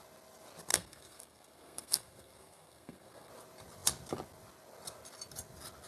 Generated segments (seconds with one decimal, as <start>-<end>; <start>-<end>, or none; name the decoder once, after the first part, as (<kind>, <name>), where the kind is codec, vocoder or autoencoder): 0.7-3.3 (codec, SNAC)